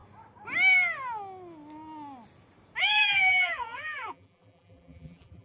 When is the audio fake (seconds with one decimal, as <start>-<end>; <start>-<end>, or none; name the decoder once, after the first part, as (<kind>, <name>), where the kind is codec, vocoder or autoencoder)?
2.8-5.4 (vocoder, BigVGAN v2)